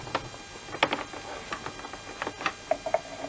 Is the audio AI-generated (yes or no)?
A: no